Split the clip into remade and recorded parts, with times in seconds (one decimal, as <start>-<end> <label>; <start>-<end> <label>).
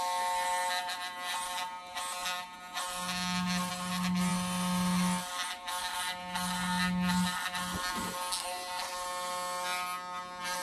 0.0-10.6 recorded